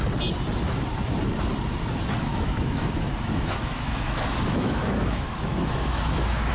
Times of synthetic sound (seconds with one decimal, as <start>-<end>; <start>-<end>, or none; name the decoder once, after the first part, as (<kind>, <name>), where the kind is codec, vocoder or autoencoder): 2.3-6.5 (autoencoder, DAC-VAE)